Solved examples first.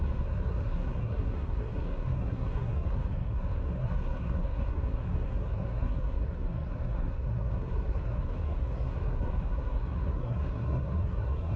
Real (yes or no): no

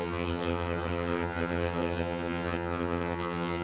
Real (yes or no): no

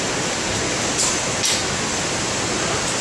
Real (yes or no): yes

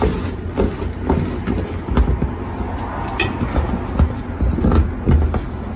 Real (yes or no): yes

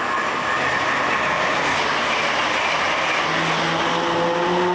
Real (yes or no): yes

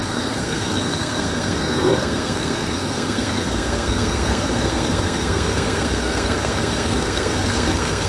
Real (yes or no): no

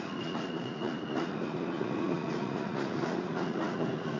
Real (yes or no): no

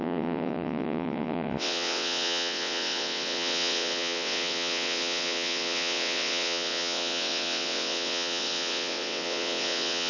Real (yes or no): no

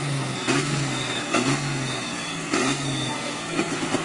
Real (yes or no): no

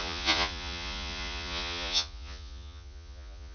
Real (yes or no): no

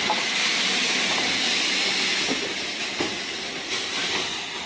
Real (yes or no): yes